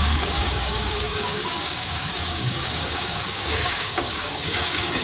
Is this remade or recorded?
remade